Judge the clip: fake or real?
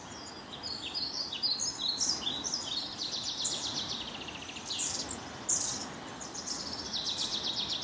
real